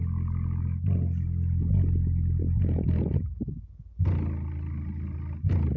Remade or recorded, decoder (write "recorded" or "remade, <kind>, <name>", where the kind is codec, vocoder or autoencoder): recorded